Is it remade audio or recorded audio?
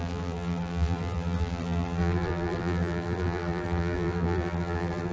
remade